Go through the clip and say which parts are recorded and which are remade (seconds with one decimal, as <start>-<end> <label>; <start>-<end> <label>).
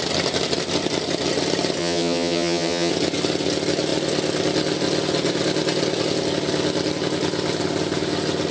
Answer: 0.0-1.8 recorded; 1.8-2.9 remade; 2.9-8.5 recorded